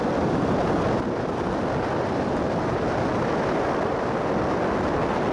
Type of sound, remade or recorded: recorded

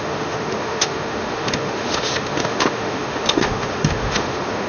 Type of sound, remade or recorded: remade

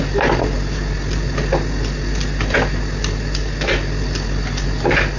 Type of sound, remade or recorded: recorded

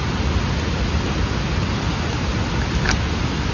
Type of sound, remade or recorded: recorded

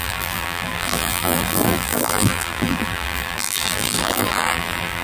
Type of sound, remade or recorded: remade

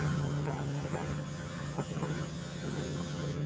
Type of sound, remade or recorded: remade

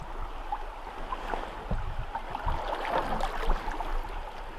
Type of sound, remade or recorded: recorded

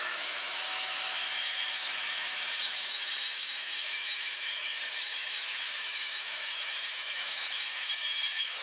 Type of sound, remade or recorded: remade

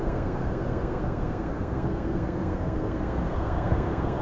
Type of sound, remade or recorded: remade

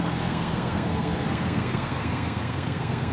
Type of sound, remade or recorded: remade